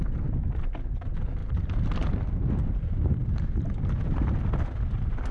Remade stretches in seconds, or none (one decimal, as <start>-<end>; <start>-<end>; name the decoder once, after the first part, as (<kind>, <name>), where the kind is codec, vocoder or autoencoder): none